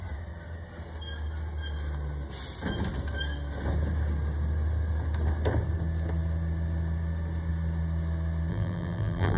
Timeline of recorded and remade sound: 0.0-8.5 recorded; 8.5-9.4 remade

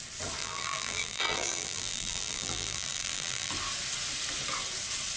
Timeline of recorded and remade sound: 0.0-0.4 recorded; 0.4-3.5 remade; 3.5-5.2 recorded

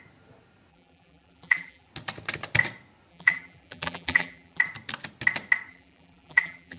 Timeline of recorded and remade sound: 0.0-0.7 recorded; 0.7-1.9 remade; 1.9-3.1 recorded; 3.1-4.6 remade; 4.6-5.7 recorded; 5.7-6.8 remade

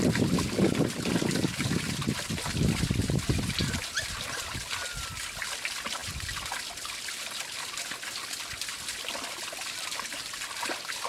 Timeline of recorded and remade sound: 0.0-11.1 recorded

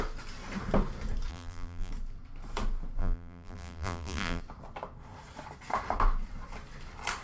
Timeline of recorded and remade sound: 0.0-1.3 recorded; 1.3-1.9 remade; 1.9-3.0 recorded; 3.0-4.4 remade; 4.4-7.2 recorded

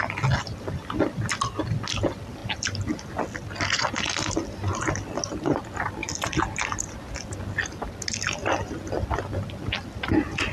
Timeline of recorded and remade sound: 0.0-10.5 recorded

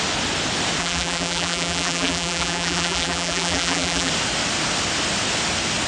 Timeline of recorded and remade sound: 0.0-0.8 recorded; 0.8-4.1 remade; 4.1-5.9 recorded

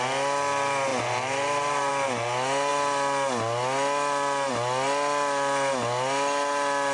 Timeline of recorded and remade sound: 0.0-0.9 recorded; 0.9-1.9 remade; 1.9-6.9 recorded